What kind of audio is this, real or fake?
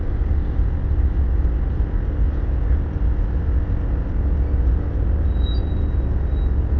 real